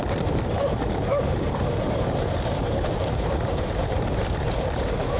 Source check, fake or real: fake